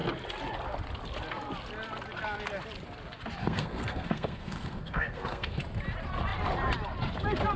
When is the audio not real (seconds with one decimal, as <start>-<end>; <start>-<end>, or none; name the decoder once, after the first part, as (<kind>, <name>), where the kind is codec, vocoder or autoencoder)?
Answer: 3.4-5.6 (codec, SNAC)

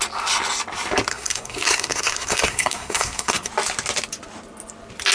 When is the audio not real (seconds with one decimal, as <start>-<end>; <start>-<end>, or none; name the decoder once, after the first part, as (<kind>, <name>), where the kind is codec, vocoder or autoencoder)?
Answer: 1.1-3.5 (codec, SNAC)

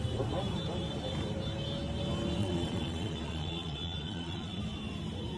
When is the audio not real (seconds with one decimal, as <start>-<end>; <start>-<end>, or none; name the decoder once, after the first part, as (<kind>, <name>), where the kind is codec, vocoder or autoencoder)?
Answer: 2.4-4.6 (vocoder, Vocos)

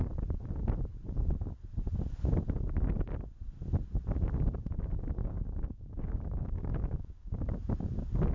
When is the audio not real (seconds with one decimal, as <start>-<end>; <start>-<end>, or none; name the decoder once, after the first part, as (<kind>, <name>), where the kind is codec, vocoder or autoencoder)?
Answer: 5.2-7.5 (codec, DAC)

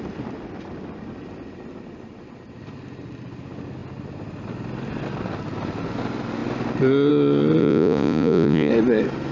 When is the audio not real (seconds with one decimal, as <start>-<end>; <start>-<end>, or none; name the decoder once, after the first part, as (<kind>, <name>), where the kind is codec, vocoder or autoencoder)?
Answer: 7.6-8.7 (vocoder, Vocos)

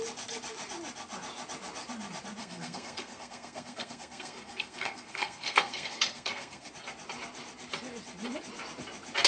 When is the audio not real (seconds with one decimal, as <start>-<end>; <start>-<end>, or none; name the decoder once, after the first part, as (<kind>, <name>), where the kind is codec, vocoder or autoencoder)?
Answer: 2.4-6.7 (codec, SNAC)

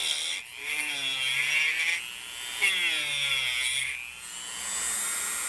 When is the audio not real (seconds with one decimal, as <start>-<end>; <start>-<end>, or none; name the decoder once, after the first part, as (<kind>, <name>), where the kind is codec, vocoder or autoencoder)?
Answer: none

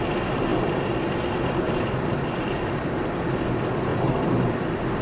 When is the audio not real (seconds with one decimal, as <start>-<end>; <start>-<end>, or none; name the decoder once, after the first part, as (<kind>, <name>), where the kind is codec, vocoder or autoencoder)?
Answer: 0.5-3.5 (vocoder, BigVGAN v2); 3.9-5.0